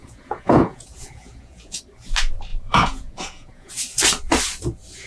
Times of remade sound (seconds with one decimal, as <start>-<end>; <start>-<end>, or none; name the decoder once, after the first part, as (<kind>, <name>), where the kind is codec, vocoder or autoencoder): 0.0-1.8 (vocoder, Vocos); 2.5-3.7